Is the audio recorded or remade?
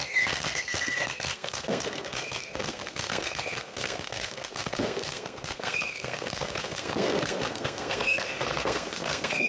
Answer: remade